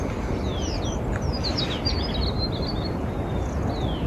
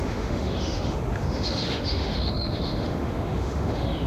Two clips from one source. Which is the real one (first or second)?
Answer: first